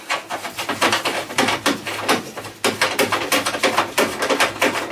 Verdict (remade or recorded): recorded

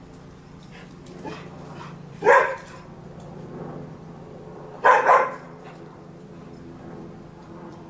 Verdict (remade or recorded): remade